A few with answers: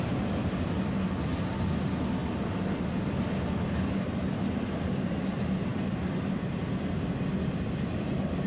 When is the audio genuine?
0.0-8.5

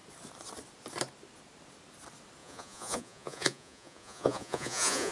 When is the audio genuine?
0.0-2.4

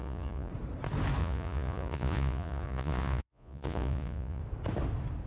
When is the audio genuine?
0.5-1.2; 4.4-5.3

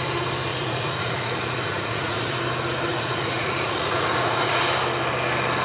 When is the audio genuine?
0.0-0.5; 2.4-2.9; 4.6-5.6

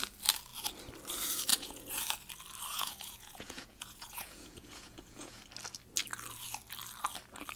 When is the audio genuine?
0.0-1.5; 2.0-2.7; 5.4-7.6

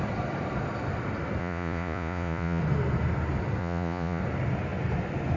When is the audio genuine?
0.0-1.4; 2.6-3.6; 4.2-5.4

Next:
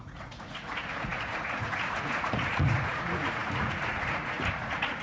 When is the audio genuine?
none

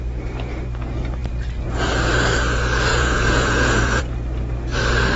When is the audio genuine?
0.0-2.9; 4.0-5.2